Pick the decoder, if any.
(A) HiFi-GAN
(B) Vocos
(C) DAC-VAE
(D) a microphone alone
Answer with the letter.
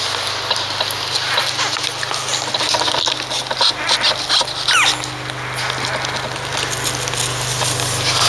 D